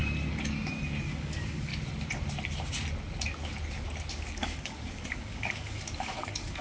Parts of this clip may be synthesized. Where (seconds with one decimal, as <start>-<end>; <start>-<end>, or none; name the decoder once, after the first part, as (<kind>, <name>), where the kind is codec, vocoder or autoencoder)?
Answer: 1.0-1.7 (codec, DAC); 4.1-6.6